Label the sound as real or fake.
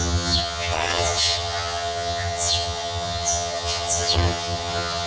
fake